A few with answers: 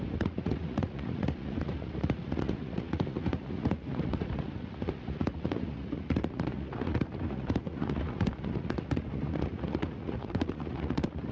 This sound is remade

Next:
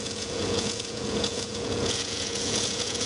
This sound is remade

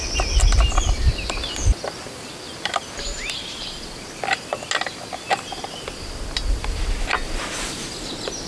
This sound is recorded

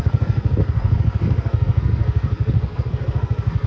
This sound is remade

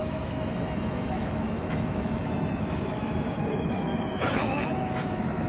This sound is remade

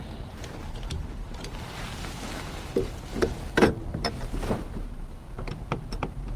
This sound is remade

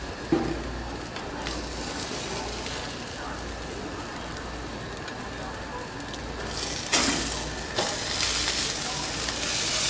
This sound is recorded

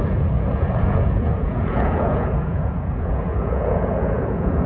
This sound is remade